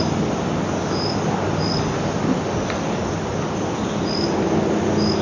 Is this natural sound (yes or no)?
yes